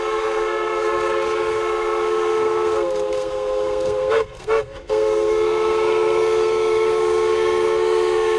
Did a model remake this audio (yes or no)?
yes